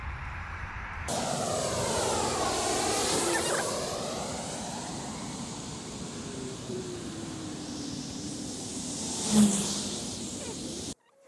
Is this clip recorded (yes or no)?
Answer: no